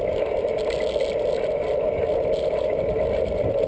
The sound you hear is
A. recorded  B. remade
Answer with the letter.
A